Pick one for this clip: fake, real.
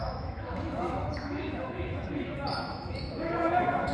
fake